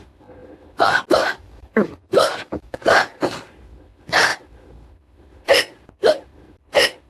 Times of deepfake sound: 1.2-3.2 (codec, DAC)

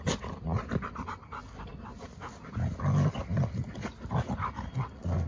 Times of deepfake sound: none

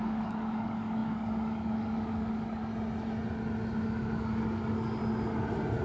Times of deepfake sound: 0.0-2.7 (codec, DAC); 3.8-5.0

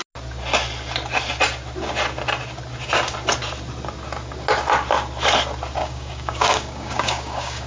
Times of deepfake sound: 5.8-7.7 (codec, DAC)

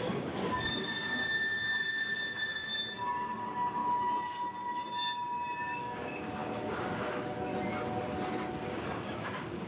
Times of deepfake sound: 0.0-3.8 (codec, DAC); 5.8-7.5; 8.6-9.7